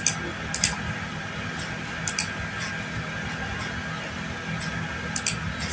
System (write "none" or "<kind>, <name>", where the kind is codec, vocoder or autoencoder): none